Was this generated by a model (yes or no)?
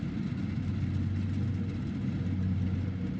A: no